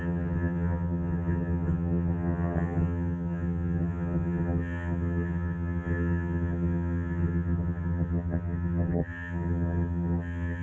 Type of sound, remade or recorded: remade